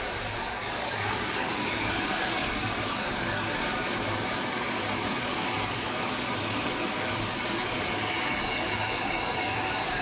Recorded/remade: remade